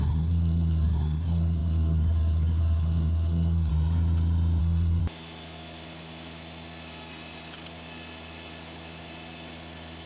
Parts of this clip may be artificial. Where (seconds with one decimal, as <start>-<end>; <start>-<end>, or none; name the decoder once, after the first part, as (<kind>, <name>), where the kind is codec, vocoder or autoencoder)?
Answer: 0.0-3.7 (codec, SNAC); 4.6-5.0